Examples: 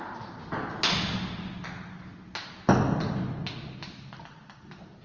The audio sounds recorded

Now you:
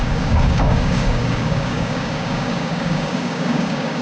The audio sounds remade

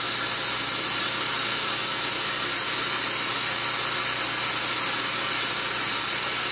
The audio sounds recorded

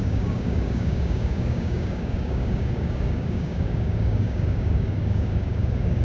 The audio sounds remade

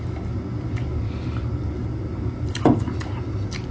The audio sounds recorded